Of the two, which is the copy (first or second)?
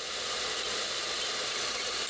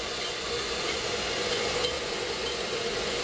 second